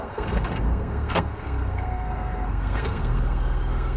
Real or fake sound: fake